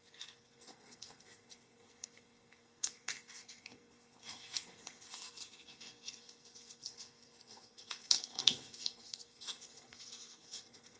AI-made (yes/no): yes